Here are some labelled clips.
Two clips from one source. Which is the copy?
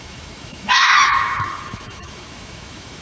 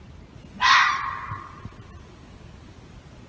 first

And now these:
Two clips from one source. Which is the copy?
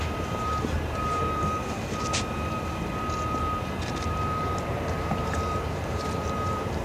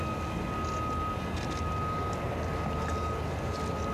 first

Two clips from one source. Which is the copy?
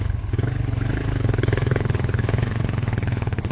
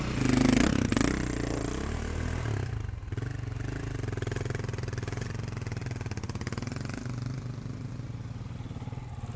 first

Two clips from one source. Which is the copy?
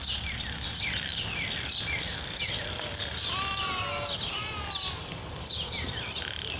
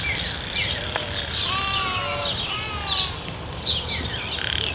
first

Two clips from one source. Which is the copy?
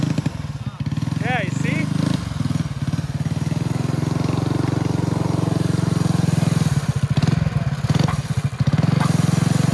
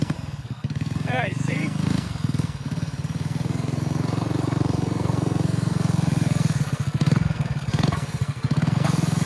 second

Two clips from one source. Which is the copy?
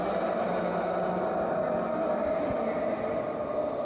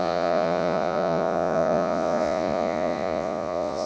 second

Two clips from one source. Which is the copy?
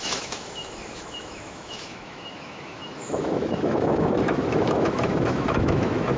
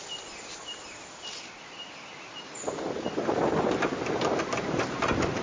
first